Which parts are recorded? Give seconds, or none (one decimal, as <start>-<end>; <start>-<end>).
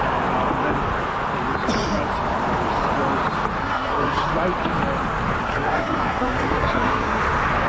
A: 0.0-3.6; 4.3-5.4; 7.2-7.7